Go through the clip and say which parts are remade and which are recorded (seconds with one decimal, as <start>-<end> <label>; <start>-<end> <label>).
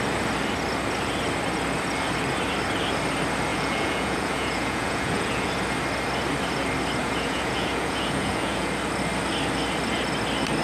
0.0-3.5 recorded; 3.5-5.5 remade; 5.5-7.0 recorded; 7.0-8.7 remade; 8.7-10.6 recorded